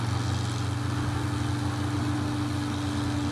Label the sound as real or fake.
real